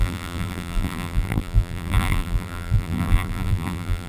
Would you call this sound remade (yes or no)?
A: yes